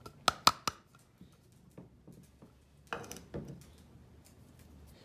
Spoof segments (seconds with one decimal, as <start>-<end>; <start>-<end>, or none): none